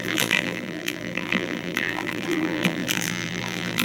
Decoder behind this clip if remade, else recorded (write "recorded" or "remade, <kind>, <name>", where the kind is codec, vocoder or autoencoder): remade, vocoder, BigVGAN v2